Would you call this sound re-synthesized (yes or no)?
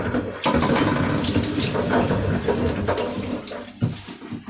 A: no